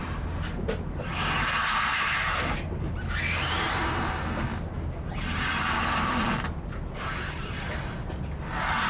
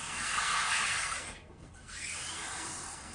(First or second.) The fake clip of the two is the second